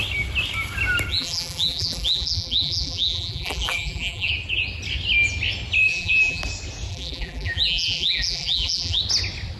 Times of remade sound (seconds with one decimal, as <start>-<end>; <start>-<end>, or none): 1.1-4.3; 5.9-6.4; 6.9-9.0